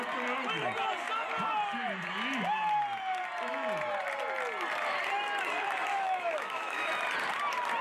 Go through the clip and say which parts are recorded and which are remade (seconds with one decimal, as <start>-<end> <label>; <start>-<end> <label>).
0.0-5.9 recorded; 5.9-6.9 remade; 6.9-7.8 recorded